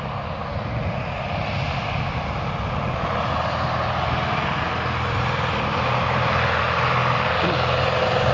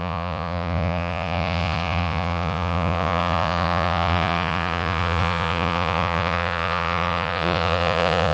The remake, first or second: second